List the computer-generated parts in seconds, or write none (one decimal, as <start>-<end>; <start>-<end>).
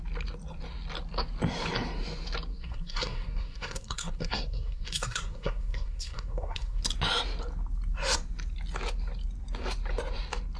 2.5-6.8